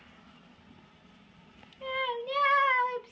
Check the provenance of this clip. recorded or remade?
recorded